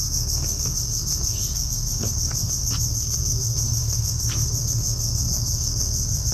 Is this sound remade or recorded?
remade